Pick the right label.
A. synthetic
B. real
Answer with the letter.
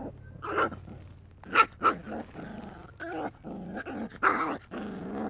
B